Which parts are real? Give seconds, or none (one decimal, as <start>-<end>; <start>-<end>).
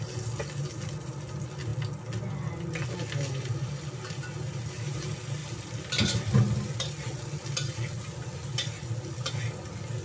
0.0-10.0